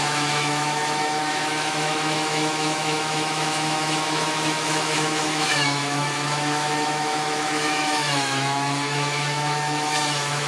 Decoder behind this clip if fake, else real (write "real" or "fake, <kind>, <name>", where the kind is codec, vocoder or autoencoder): fake, autoencoder, DAC-VAE